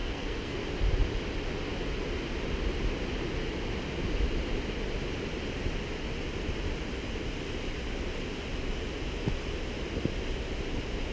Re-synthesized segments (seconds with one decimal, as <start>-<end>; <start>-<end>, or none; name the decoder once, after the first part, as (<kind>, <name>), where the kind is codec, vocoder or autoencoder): 0.0-0.6 (codec, SNAC)